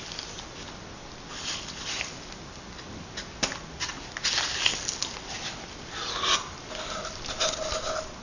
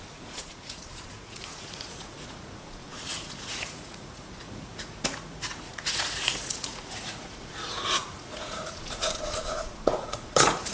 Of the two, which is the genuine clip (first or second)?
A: first